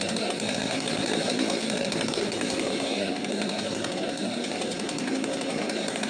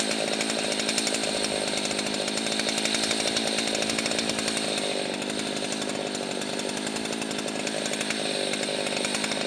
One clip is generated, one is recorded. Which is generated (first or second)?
first